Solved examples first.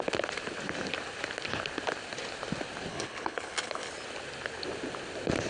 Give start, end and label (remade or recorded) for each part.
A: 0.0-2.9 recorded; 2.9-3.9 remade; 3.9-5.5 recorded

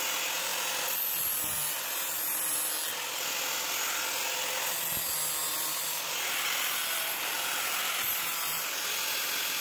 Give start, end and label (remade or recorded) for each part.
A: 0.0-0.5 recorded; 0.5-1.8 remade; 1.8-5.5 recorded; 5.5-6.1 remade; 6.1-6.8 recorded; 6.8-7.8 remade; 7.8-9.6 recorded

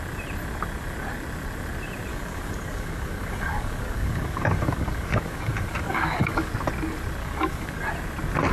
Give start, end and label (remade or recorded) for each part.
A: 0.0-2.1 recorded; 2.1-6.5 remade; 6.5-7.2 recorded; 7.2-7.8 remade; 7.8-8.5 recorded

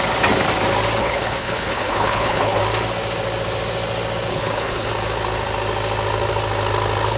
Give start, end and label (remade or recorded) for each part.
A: 0.0-1.0 recorded; 1.0-2.6 remade; 2.6-4.3 recorded; 4.3-4.9 remade; 4.9-7.2 recorded

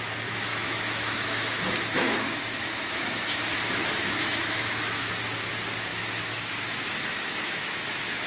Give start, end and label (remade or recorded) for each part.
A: 0.0-0.5 recorded; 0.5-5.1 remade; 5.1-5.9 recorded; 5.9-8.3 remade